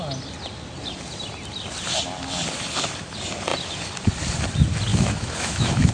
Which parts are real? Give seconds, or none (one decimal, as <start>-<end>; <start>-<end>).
0.0-4.9